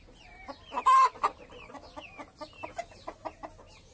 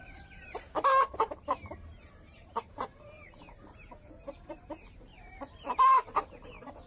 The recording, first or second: first